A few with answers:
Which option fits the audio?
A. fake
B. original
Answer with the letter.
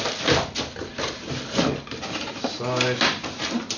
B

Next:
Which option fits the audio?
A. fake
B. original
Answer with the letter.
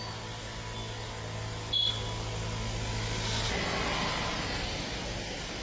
B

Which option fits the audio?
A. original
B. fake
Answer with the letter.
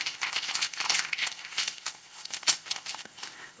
B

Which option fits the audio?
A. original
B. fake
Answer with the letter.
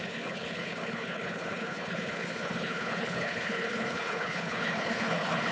B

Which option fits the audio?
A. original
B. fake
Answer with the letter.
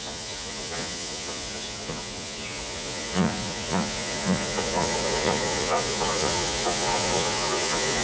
B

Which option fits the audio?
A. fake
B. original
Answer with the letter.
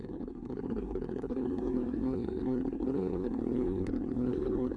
A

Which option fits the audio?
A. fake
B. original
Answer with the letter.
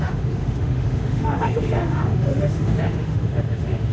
A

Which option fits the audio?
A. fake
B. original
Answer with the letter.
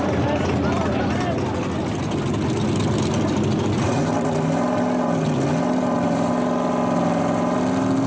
B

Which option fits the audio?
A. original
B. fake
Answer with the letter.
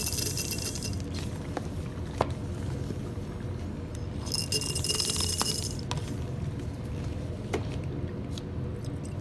A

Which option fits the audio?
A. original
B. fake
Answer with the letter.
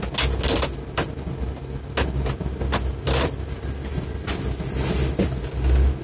A